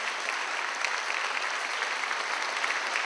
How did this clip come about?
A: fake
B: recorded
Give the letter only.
B